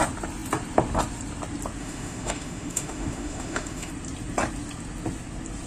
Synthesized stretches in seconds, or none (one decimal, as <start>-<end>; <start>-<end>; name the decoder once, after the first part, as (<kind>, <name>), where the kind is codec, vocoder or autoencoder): 1.8-3.9 (autoencoder, DAC-VAE)